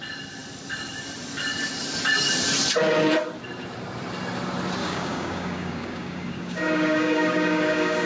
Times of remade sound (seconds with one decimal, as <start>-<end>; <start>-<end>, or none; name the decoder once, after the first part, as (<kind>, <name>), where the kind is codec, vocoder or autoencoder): 4.8-8.1 (codec, DAC)